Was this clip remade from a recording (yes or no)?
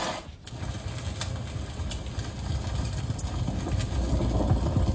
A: no